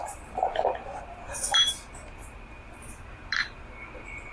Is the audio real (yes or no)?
no